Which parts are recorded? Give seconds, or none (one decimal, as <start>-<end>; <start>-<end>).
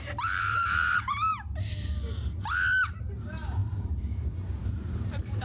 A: 1.3-2.9